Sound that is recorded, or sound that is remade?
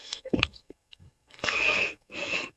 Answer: remade